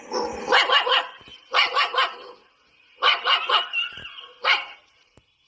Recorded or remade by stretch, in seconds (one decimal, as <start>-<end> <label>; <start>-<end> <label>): 0.0-5.5 recorded